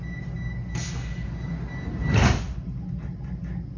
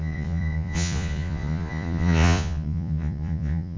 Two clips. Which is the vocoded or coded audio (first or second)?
second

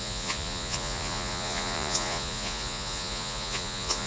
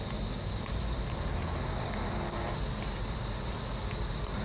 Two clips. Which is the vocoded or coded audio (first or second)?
first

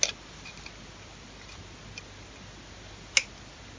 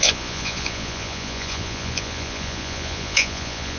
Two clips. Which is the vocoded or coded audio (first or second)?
second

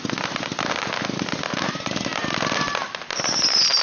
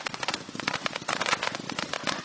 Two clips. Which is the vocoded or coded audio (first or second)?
second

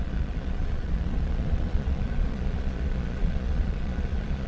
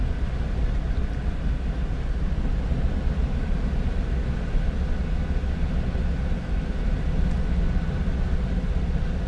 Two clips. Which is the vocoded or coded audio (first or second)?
first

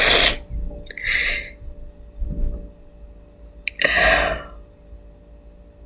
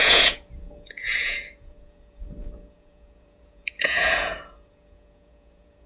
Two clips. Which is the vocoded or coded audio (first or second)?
second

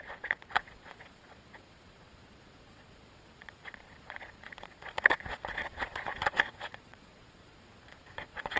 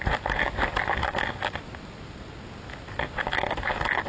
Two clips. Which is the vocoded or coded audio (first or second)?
first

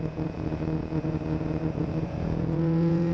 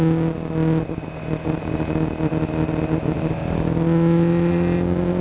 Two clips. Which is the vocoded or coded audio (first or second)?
first